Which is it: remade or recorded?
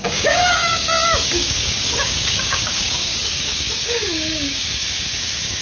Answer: remade